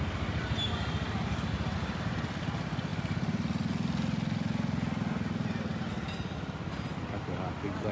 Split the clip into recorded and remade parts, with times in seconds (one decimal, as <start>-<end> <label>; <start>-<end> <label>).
0.0-7.9 recorded